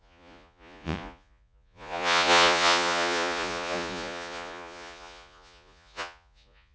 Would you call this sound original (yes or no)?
no